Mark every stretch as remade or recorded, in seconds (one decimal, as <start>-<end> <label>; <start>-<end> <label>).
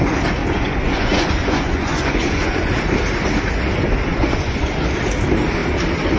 0.0-0.4 recorded; 0.4-2.7 remade; 2.7-4.1 recorded; 4.1-4.7 remade; 4.7-6.2 recorded